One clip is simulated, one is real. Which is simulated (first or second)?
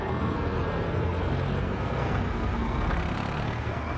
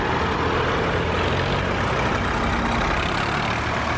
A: first